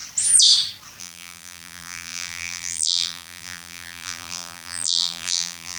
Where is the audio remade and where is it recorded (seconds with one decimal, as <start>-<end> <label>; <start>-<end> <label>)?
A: 0.0-1.0 recorded; 1.0-5.8 remade